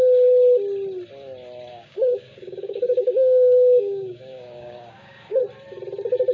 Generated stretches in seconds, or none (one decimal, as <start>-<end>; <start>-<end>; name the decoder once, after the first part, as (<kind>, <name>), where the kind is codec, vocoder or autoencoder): 1.7-5.4 (codec, DAC)